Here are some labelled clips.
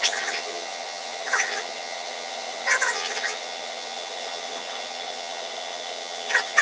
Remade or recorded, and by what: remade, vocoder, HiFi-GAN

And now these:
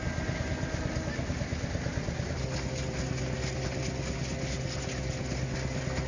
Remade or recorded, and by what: recorded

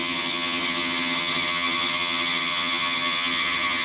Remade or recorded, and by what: remade, vocoder, HiFi-GAN